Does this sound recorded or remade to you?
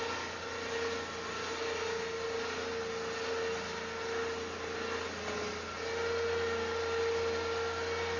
recorded